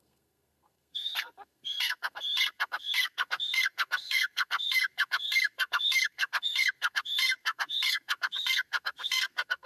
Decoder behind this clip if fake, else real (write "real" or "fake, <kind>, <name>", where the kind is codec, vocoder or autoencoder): fake, codec, SNAC